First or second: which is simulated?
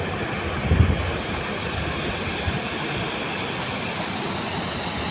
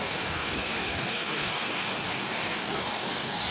second